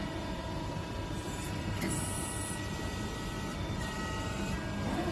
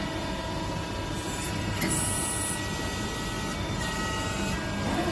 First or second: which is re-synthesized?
first